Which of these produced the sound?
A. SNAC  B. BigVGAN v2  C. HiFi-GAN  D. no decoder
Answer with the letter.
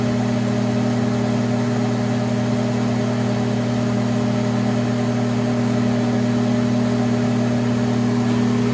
D